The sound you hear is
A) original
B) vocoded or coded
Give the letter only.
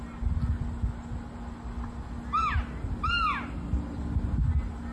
A